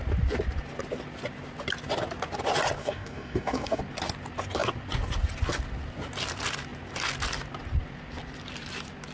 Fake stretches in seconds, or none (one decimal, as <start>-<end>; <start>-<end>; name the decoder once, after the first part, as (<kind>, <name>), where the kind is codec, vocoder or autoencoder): 2.8-3.8 (codec, DAC)